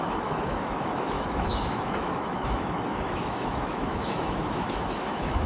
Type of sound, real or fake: fake